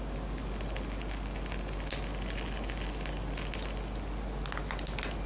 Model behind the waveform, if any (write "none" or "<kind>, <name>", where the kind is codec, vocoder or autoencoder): none